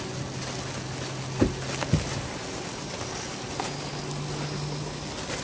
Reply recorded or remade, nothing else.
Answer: recorded